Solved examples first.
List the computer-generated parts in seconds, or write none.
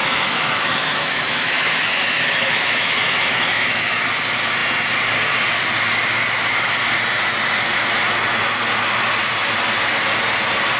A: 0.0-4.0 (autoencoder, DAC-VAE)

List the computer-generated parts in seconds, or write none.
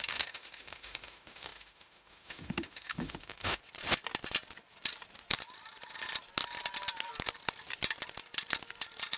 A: 0.0-3.6 (autoencoder, DAC-VAE)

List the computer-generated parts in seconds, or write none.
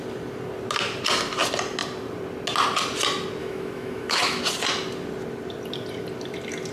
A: 3.4-4.4 (autoencoder, DAC-VAE)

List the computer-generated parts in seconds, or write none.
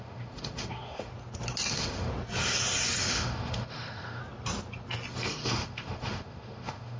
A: 0.0-1.1 (autoencoder, DAC-VAE); 1.7-2.1; 3.0-4.2; 5.1-7.0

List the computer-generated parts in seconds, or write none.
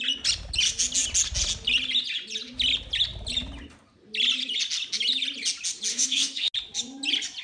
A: 5.9-6.5 (autoencoder, DAC-VAE)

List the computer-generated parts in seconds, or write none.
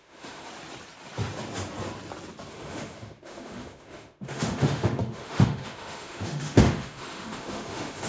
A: 0.0-0.5 (autoencoder, DAC-VAE); 2.5-8.1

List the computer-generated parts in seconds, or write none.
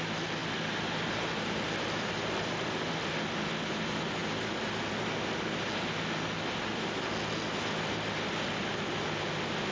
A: none